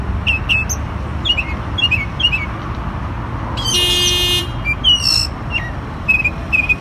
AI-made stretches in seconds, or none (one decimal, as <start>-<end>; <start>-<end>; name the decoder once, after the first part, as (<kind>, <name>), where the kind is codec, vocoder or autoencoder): none